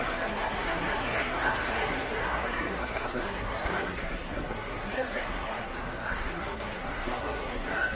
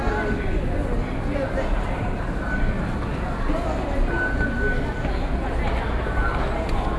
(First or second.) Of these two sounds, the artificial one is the first